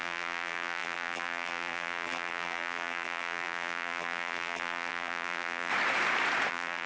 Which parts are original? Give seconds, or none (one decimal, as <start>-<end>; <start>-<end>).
5.7-6.5